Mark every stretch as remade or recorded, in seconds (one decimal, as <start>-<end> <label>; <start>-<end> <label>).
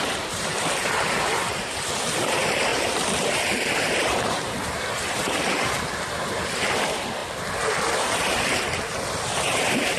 0.0-7.2 remade; 7.2-7.9 recorded; 7.9-10.0 remade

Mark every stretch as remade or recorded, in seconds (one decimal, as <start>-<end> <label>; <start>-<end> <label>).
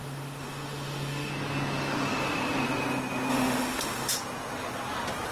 0.0-1.3 remade; 1.3-3.3 recorded; 3.3-4.1 remade; 4.1-5.3 recorded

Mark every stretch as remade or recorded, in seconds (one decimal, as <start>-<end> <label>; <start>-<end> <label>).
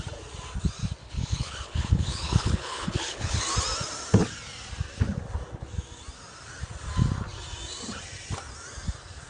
0.0-1.0 recorded; 1.0-3.4 remade; 3.4-9.3 recorded